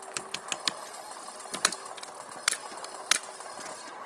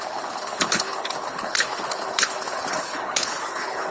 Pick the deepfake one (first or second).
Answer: second